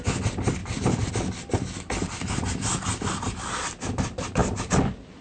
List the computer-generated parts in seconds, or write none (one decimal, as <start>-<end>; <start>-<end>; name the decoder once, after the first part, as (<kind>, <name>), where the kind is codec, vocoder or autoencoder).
0.6-1.1 (vocoder, BigVGAN v2); 4.4-5.2